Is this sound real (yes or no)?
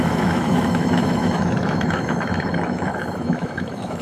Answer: no